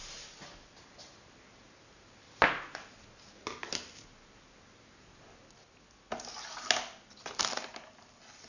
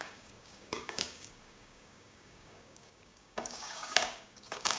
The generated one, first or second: second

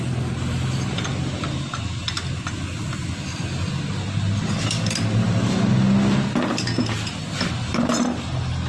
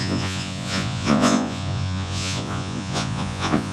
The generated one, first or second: second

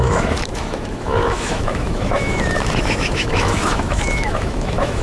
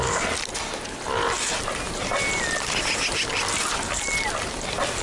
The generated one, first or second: first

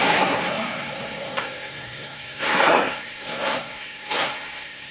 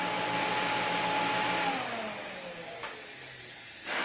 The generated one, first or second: first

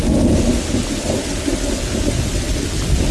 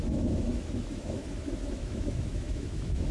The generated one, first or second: second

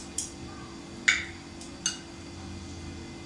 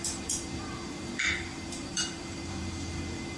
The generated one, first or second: second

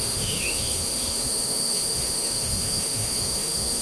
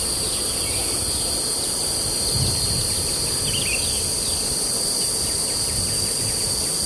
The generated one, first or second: first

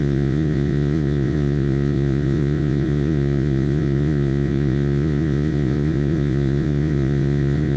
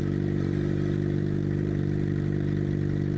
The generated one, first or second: first